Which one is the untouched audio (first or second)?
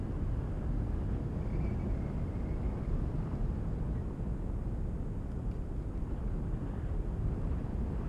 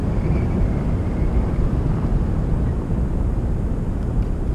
first